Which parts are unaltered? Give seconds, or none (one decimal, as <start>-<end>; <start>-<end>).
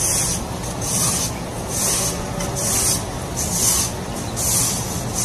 0.0-3.0; 3.5-5.2